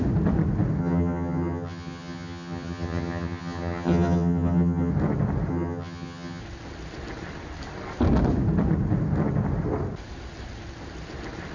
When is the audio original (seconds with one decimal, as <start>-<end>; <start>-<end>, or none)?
0.0-0.8; 4.9-5.5; 6.4-11.5

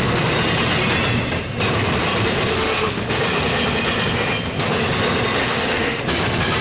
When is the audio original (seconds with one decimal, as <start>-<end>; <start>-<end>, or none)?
0.0-2.5; 3.1-5.4; 6.0-6.6